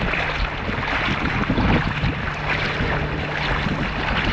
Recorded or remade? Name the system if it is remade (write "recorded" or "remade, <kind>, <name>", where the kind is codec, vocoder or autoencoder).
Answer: recorded